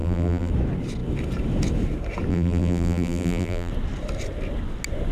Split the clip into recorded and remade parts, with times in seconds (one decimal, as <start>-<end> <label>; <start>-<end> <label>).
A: 0.0-0.5 remade; 0.5-2.3 recorded; 2.3-3.7 remade; 3.7-5.1 recorded